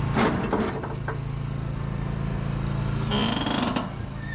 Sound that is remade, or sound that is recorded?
recorded